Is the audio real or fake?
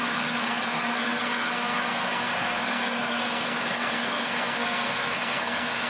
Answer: fake